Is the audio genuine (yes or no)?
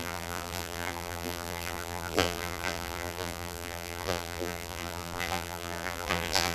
no